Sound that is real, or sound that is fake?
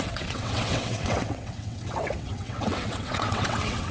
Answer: fake